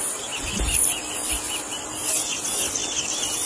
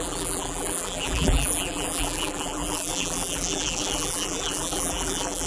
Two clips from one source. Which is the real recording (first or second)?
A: first